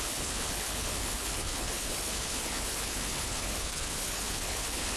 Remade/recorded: remade